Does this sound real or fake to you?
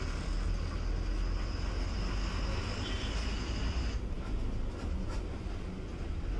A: real